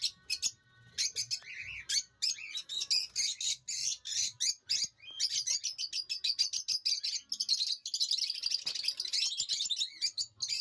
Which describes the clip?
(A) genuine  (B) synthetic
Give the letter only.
A